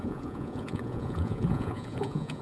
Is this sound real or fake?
fake